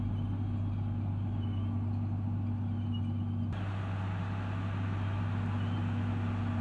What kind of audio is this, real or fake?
real